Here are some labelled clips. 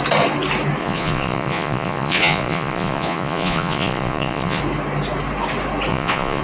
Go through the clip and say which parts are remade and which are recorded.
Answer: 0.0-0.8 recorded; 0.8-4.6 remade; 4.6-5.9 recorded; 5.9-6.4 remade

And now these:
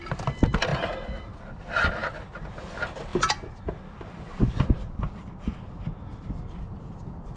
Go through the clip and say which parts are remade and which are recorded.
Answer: 0.0-7.4 recorded

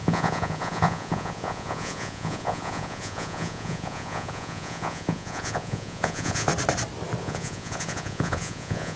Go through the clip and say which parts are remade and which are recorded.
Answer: 0.0-6.5 remade; 6.5-7.2 recorded; 7.2-9.0 remade